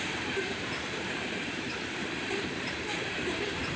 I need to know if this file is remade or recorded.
remade